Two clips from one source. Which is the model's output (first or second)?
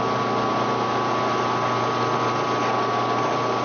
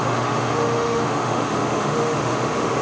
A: second